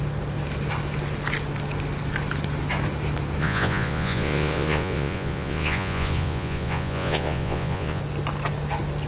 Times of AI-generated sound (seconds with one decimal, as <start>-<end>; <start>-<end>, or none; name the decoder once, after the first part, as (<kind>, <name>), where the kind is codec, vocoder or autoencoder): 3.4-8.0 (vocoder, Vocos)